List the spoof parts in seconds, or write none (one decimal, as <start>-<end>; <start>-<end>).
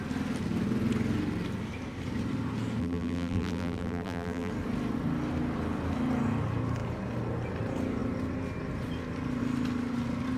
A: 2.8-4.5